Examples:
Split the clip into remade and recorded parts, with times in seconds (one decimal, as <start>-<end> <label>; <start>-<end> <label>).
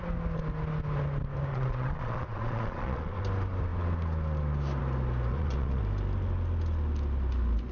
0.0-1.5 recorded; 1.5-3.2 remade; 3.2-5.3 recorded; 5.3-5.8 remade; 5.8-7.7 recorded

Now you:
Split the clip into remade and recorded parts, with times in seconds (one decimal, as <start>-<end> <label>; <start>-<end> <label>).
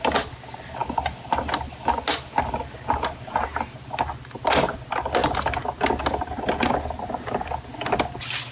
0.0-8.5 recorded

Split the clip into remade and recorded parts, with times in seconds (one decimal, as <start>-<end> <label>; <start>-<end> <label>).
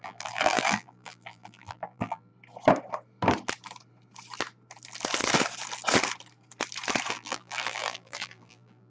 0.0-2.3 remade; 2.3-7.1 recorded; 7.1-8.9 remade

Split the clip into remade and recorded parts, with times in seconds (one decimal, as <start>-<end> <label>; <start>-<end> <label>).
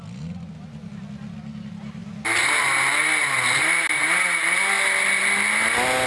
0.0-6.1 recorded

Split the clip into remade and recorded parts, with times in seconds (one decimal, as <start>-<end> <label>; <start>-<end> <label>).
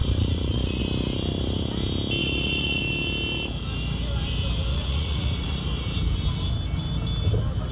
0.0-0.8 remade; 0.8-2.2 recorded; 2.2-2.8 remade; 2.8-4.7 recorded; 4.7-5.6 remade; 5.6-7.7 recorded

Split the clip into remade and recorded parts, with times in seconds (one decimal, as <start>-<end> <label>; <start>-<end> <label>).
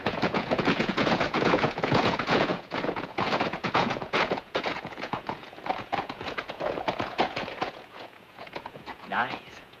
0.0-9.8 remade